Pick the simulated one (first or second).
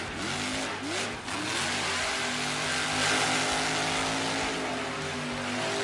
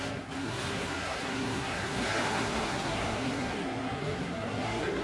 second